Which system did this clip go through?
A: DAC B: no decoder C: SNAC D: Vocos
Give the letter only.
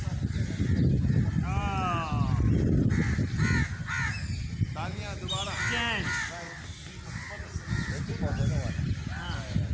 B